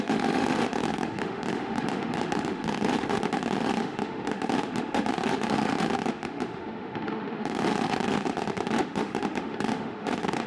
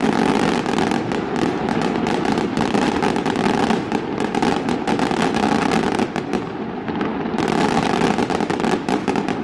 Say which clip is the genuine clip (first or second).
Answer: second